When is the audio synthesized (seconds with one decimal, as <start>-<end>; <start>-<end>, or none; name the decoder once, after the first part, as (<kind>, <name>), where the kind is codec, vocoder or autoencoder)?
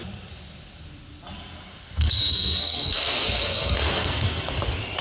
1.7-4.5 (codec, SNAC)